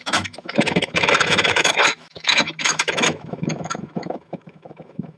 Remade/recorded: remade